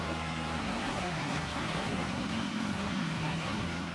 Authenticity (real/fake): fake